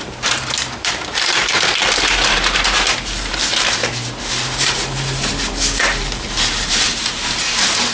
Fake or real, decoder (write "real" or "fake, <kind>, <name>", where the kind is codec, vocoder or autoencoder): fake, vocoder, BigVGAN v2